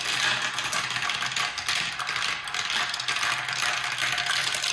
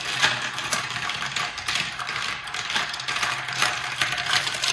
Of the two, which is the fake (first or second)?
second